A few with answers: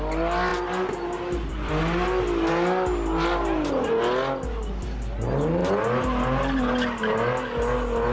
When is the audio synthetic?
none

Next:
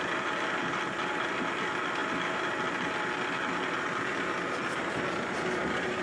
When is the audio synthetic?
none